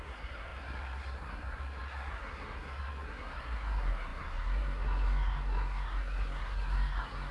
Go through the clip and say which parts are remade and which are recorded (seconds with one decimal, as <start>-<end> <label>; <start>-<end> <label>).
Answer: 0.0-7.3 remade